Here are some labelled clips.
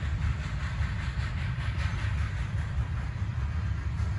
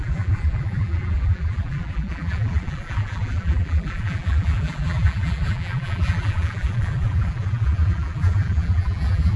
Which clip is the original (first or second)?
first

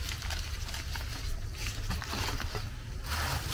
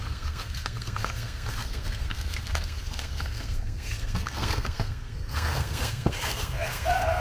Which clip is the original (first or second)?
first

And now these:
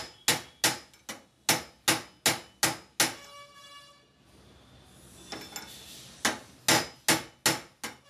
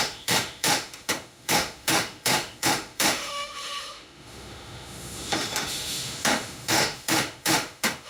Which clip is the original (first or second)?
first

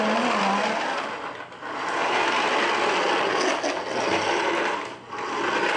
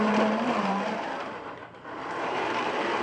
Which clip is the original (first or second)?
first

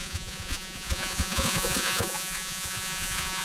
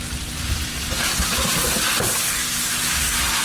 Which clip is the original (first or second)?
second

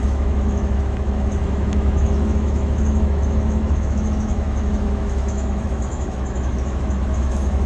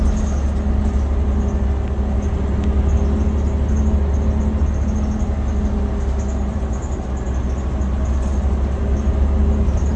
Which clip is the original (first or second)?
second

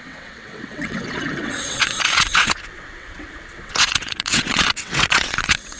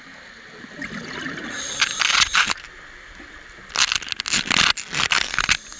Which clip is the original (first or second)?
second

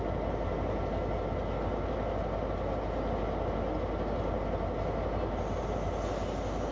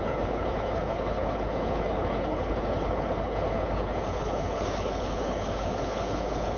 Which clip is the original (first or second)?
first